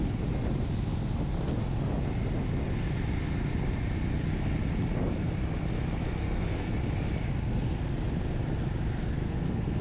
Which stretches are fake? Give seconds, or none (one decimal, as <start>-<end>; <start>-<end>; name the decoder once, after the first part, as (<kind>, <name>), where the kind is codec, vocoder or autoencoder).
6.2-6.7 (codec, SNAC); 9.0-9.8